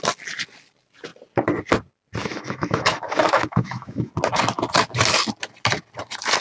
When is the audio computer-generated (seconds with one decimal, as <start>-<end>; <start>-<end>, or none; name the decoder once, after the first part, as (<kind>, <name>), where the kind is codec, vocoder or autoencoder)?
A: 2.2-4.1 (autoencoder, DAC-VAE)